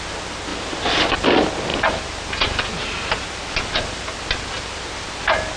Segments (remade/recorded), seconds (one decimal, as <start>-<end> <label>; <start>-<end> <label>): 0.0-0.5 recorded; 0.5-1.1 remade; 1.1-1.7 recorded; 1.7-5.1 remade; 5.1-5.6 recorded